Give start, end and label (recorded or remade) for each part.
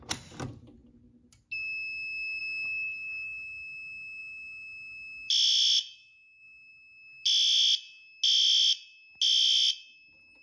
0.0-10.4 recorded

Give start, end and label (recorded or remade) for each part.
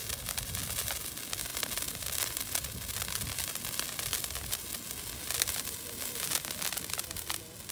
0.0-7.7 recorded